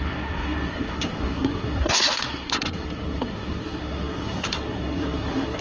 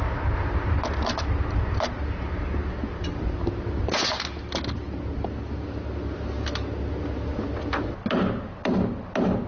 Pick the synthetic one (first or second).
first